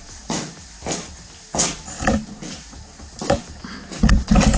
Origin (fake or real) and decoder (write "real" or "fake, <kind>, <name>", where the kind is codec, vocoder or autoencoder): real